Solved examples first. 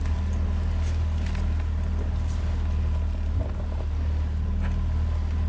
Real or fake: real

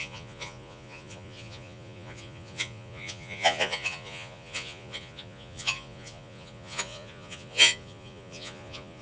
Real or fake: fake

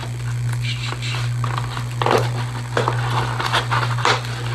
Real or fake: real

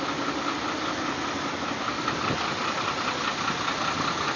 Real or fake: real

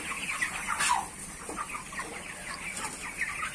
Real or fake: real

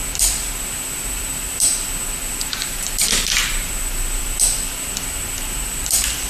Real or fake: fake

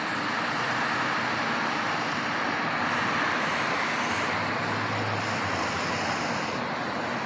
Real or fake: real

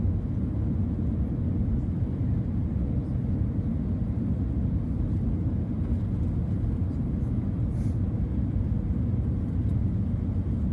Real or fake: real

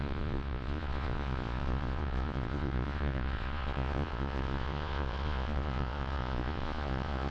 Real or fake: fake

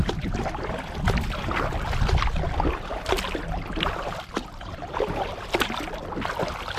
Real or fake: real